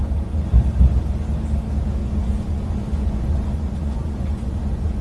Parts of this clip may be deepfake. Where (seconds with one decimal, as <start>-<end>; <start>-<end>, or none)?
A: 0.0-0.5; 2.0-5.0